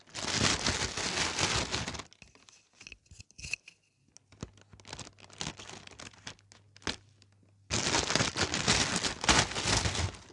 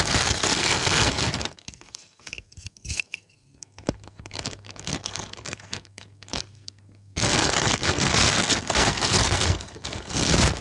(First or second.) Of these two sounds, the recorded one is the first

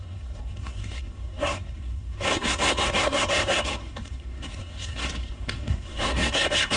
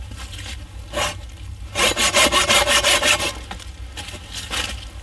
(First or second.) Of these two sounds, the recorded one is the second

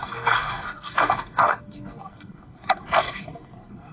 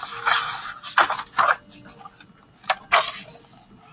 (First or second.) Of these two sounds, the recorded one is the second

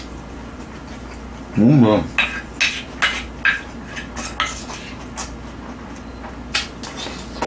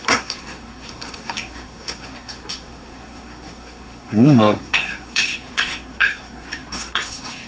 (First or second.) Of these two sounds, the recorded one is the first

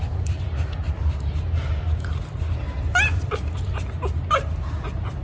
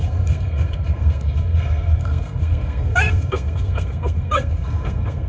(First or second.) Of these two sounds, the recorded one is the first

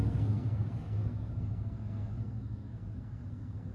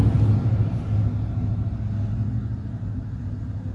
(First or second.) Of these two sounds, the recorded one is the second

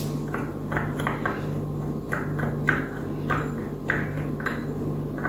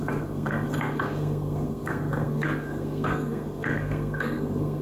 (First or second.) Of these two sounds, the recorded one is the first